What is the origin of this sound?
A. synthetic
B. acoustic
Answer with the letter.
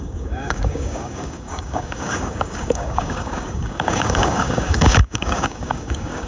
A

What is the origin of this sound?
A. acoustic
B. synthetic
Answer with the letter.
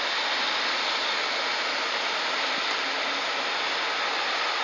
A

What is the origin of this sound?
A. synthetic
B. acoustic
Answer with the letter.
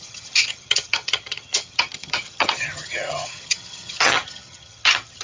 A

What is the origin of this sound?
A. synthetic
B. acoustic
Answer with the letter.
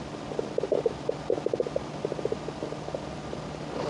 B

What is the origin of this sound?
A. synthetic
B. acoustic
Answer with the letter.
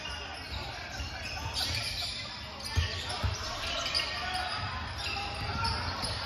B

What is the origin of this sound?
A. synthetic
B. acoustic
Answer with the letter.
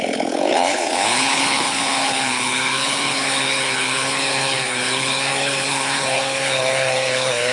A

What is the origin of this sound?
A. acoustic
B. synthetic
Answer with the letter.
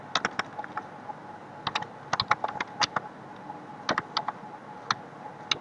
A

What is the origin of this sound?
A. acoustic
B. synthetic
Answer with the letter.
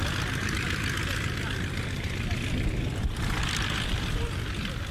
A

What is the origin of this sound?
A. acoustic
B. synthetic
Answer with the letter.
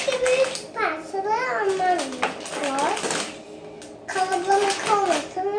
A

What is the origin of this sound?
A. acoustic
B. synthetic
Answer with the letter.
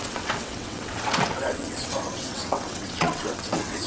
B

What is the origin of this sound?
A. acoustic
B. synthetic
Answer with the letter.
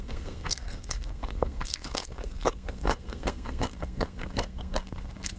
B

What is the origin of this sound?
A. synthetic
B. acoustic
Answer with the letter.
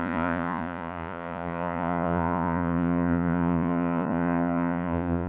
A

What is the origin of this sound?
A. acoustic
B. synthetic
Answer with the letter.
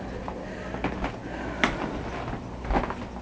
A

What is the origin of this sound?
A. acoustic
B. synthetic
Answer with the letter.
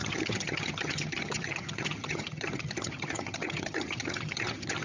B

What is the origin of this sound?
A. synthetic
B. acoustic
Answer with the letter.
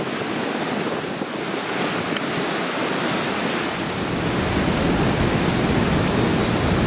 B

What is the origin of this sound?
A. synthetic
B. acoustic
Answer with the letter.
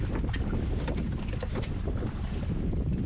B